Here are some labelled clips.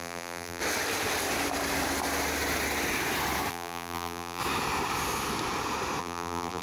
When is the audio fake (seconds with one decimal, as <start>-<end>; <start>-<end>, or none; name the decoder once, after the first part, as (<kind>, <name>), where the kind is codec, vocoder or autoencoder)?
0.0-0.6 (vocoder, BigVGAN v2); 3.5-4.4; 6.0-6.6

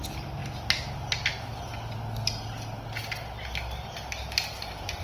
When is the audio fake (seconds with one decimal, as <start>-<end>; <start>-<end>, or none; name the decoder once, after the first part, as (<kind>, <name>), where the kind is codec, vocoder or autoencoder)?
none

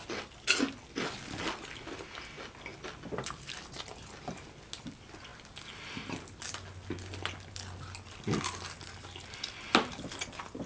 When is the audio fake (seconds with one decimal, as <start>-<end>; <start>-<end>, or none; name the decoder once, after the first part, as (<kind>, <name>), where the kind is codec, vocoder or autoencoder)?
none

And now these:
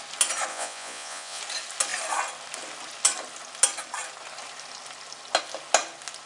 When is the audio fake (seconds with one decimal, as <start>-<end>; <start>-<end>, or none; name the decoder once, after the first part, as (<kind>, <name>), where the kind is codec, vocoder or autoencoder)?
0.5-1.4 (vocoder, Vocos)